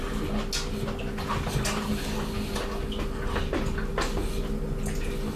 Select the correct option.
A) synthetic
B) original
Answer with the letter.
B